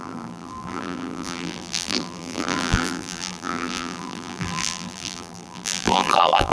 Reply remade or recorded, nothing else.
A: remade